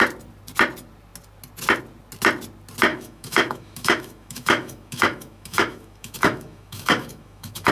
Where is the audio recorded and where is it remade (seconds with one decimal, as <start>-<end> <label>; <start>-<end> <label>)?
0.0-2.9 recorded; 2.9-7.7 remade